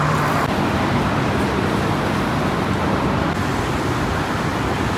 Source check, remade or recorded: remade